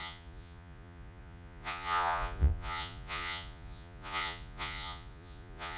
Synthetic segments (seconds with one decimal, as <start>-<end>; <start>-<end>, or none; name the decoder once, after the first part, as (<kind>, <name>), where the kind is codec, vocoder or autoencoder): 0.0-5.8 (vocoder, Vocos)